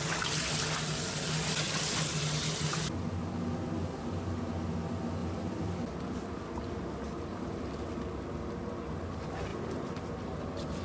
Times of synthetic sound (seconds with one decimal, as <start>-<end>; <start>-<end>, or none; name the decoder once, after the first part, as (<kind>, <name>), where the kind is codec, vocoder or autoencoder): 3.8-4.4 (vocoder, BigVGAN v2); 5.2-5.8; 7.3-8.0; 9.5-10.1